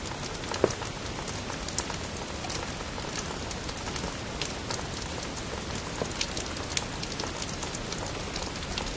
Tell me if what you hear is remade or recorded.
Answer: recorded